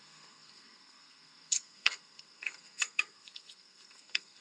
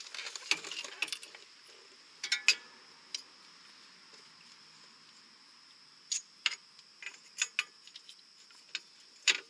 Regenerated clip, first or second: first